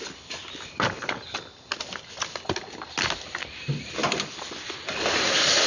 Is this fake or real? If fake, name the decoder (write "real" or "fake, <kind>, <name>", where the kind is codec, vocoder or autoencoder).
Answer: real